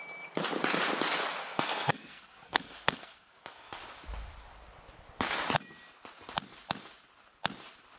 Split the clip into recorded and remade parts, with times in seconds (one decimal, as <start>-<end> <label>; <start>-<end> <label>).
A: 0.0-1.4 recorded; 1.4-3.8 remade; 3.8-8.0 recorded